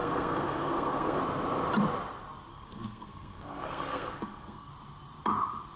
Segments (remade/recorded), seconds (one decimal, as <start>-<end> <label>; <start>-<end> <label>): 0.0-1.2 remade; 1.2-2.5 recorded; 2.5-4.7 remade; 4.7-5.8 recorded